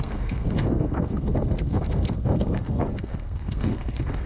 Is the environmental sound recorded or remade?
remade